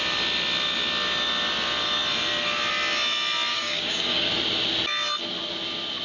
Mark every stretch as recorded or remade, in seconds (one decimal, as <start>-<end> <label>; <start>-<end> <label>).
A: 0.0-3.5 recorded; 3.5-4.3 remade; 4.3-6.0 recorded